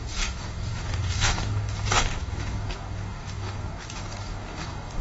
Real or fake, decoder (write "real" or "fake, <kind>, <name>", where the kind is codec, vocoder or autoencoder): fake, codec, DAC